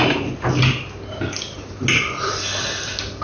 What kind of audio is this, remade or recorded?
recorded